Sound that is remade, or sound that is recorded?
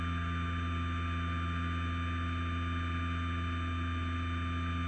recorded